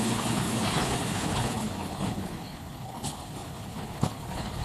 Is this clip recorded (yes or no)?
no